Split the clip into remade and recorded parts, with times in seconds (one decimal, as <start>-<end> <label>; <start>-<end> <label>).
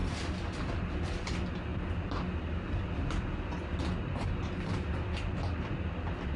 0.0-6.4 recorded